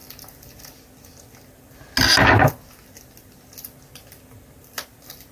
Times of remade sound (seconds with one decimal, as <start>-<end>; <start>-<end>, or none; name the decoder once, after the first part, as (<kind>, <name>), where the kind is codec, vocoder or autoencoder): none